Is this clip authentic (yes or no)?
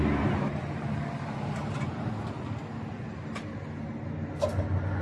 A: yes